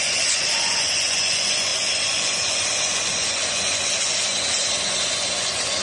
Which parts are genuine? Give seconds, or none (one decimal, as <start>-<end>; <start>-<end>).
none